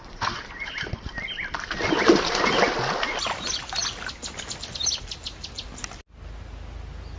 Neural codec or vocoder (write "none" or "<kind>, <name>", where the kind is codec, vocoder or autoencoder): none